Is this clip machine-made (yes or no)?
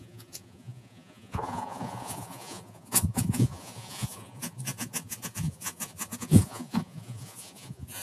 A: yes